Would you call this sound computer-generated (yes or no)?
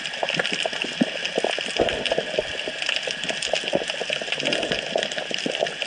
no